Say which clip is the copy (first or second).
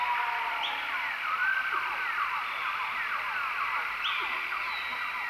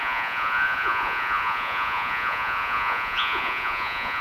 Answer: second